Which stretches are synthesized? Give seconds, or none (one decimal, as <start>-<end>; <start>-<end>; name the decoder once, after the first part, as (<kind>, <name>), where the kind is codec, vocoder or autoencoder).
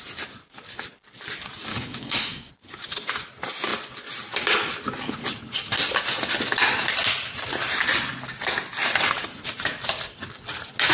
1.7-2.5 (codec, DAC)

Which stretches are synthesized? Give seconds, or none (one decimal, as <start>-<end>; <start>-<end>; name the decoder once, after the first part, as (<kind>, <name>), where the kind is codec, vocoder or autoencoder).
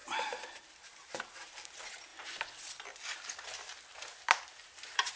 0.0-2.1 (vocoder, BigVGAN v2); 3.3-3.7; 4.6-5.2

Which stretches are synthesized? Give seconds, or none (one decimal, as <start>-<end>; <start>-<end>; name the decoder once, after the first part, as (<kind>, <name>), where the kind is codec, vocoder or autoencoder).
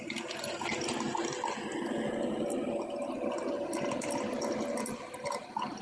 none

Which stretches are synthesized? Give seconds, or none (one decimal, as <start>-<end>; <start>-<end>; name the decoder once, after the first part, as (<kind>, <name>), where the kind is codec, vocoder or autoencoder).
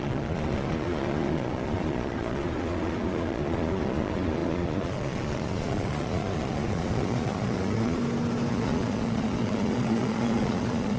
0.0-8.0 (vocoder, Vocos); 8.5-11.0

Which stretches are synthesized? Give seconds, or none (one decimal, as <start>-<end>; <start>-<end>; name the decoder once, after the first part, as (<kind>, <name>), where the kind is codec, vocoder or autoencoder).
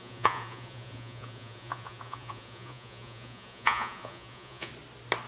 0.0-4.7 (vocoder, Vocos)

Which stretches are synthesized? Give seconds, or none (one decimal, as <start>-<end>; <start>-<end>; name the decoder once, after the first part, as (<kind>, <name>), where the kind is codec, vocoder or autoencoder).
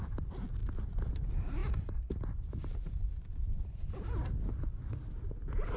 none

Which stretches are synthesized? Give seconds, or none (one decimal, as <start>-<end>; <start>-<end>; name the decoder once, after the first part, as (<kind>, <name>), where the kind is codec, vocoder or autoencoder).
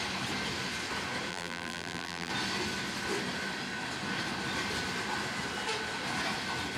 1.3-2.3 (vocoder, BigVGAN v2)